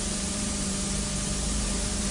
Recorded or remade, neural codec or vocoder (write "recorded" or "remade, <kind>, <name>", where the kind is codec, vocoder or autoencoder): remade, vocoder, BigVGAN v2